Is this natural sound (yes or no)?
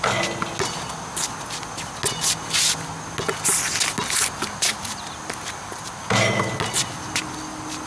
yes